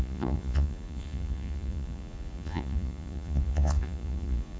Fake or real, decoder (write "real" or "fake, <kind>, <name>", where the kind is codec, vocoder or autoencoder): fake, vocoder, Vocos